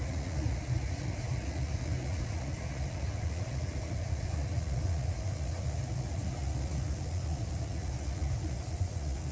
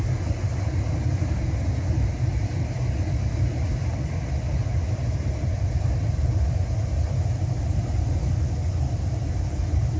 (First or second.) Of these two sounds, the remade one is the first